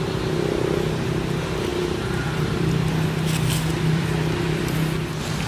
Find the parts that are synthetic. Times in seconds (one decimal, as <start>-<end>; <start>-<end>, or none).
1.7-4.6